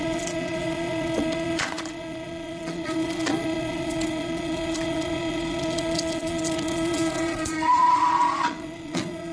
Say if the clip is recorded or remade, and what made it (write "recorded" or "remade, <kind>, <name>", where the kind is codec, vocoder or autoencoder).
remade, vocoder, Vocos